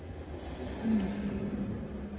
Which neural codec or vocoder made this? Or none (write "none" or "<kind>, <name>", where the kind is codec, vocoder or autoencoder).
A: none